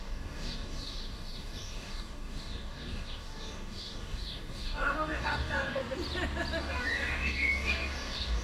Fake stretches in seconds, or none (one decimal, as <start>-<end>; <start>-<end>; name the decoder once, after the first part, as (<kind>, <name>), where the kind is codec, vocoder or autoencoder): 0.0-5.8 (codec, DAC); 6.6-8.4